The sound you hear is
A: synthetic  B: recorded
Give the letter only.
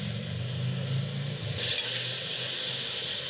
B